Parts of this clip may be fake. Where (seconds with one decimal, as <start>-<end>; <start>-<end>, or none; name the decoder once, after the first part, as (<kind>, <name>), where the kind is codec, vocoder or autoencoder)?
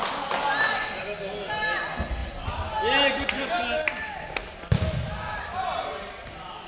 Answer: none